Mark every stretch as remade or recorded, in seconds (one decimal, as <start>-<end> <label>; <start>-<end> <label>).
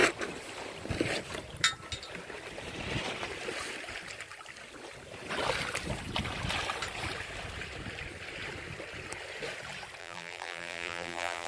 0.0-10.0 recorded; 10.0-11.5 remade